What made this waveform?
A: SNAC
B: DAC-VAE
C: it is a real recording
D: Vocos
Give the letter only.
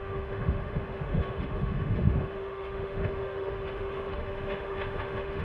B